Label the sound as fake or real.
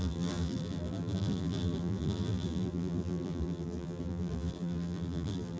fake